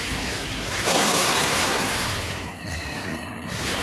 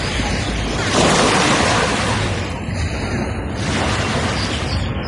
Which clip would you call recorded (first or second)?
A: second